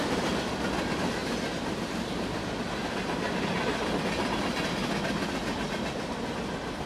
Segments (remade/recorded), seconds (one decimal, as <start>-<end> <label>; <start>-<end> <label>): 0.0-6.9 recorded

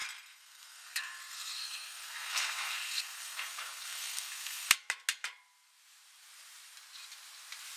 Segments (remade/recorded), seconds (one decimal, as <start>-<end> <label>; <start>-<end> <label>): 0.0-4.7 remade; 4.7-7.8 recorded

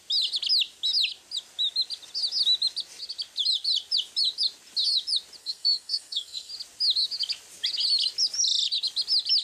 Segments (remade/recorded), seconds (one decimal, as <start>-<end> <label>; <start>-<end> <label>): 0.0-5.4 recorded; 5.4-6.5 remade; 6.5-9.4 recorded